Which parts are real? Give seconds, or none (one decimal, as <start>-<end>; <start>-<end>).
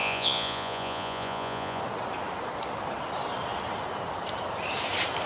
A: 1.8-5.3